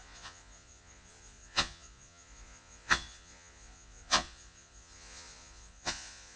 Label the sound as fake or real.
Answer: fake